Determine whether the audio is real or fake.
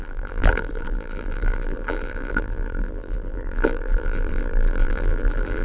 fake